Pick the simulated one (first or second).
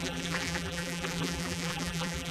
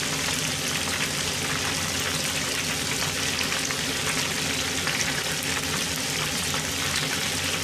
first